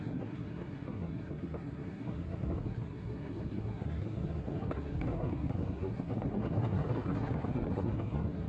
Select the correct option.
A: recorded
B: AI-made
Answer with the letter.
B